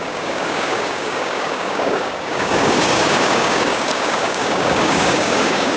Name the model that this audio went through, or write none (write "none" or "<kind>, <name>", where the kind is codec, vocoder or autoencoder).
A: codec, DAC